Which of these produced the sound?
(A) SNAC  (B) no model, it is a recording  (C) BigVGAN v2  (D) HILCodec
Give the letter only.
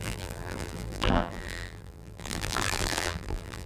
C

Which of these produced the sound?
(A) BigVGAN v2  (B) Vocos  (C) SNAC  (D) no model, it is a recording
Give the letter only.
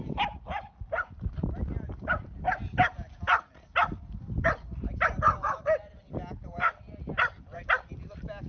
D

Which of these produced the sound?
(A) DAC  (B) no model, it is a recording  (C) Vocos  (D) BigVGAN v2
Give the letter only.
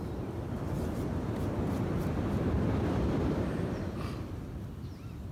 B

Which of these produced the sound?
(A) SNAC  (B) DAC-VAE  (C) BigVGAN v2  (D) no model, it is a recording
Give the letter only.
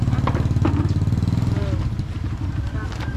D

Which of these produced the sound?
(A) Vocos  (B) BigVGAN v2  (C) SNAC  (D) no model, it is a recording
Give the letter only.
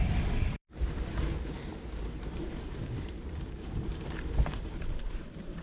B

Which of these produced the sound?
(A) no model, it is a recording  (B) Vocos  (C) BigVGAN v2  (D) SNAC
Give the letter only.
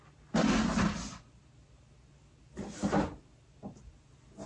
A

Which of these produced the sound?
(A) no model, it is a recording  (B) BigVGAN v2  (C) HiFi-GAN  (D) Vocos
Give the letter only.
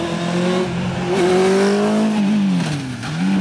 A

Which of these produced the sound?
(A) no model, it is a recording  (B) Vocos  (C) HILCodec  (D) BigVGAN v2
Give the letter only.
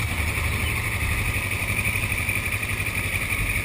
A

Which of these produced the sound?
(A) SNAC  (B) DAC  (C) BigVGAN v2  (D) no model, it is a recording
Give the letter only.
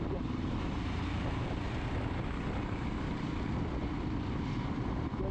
D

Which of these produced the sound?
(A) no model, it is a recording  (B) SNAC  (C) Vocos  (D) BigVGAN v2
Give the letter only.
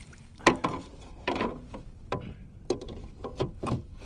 D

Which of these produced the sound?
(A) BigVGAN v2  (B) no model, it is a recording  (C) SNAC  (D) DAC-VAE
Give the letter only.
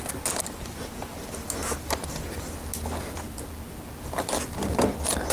B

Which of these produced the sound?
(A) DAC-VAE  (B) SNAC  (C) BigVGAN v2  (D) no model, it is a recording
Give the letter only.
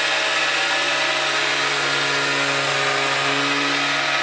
D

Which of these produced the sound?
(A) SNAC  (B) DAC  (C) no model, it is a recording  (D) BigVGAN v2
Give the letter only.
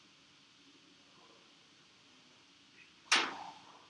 C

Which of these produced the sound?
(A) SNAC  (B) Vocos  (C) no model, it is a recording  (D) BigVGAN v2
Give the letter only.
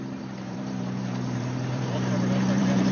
D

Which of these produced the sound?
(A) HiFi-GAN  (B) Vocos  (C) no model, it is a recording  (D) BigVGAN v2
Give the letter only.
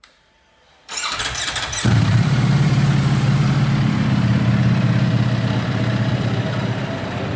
D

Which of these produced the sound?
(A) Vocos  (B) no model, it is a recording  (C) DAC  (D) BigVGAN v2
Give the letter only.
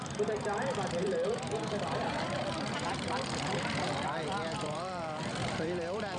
D